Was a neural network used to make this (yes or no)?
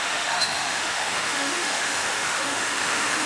yes